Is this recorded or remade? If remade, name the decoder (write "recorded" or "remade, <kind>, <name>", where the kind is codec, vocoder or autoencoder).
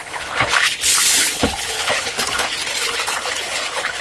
remade, codec, HILCodec